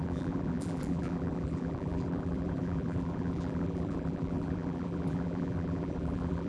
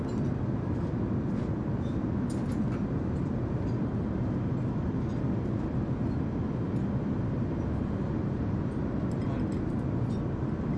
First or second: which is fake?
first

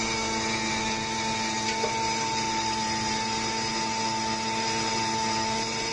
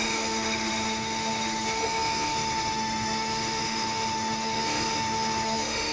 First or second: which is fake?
second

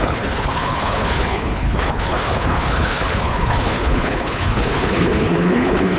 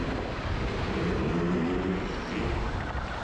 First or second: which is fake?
first